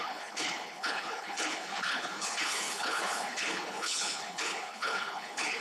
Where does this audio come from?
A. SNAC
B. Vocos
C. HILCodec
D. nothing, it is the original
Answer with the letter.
C